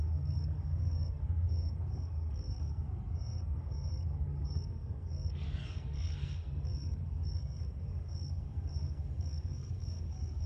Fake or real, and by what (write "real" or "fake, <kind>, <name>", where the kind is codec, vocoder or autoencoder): fake, codec, SNAC